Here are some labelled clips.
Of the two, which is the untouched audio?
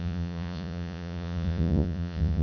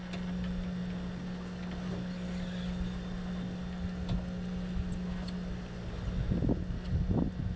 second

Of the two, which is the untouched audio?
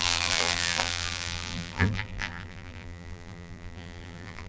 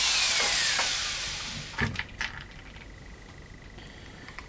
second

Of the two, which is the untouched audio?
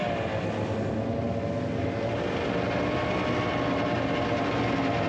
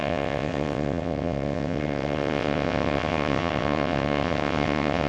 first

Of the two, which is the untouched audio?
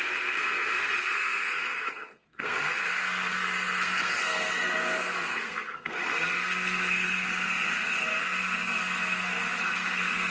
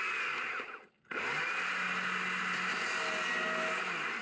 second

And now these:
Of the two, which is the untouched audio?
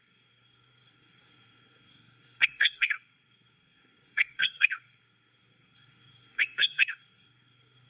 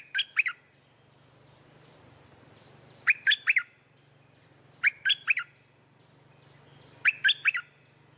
second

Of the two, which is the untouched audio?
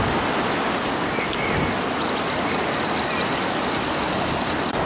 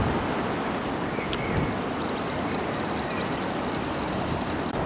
first